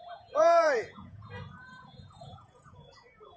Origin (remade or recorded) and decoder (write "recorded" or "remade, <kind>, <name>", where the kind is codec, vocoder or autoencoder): remade, vocoder, Vocos